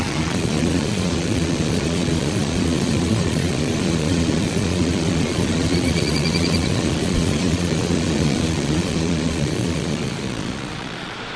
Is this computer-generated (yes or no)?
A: yes